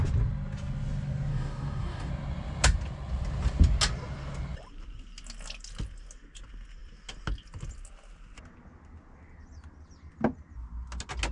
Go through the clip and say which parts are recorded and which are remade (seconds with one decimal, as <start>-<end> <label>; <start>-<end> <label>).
0.0-1.3 recorded; 1.3-2.1 remade; 2.1-11.3 recorded